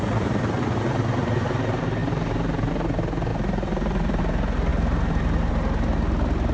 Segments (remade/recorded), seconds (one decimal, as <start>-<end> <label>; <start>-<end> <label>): 0.0-2.0 recorded; 2.0-2.7 remade; 2.7-3.3 recorded; 3.3-4.2 remade; 4.2-4.7 recorded; 4.7-5.5 remade; 5.5-6.5 recorded